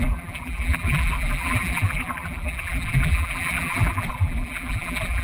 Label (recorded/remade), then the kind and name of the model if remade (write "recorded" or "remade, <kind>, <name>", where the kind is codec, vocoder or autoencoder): remade, vocoder, BigVGAN v2